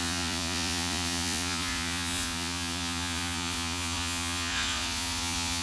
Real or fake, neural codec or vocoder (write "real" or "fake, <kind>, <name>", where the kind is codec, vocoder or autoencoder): fake, vocoder, Vocos